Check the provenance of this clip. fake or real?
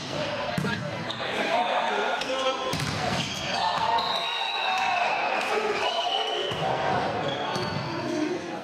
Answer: fake